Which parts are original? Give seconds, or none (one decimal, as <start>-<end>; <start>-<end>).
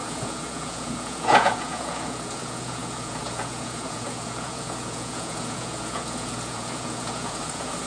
none